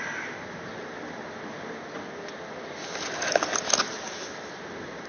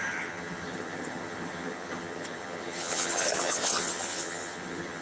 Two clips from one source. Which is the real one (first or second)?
first